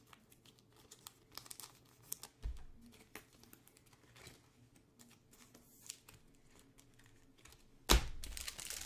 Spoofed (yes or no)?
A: no